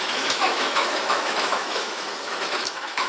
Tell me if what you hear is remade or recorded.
remade